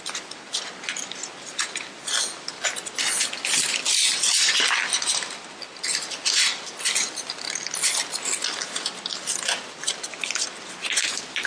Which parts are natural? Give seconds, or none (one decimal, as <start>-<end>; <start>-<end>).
0.0-11.5